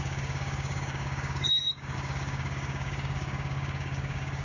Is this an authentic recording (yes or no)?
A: no